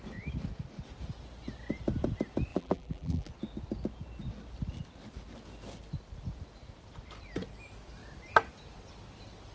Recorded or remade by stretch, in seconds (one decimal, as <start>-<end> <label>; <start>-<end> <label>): 0.0-2.5 recorded; 2.5-3.3 remade; 3.3-9.5 recorded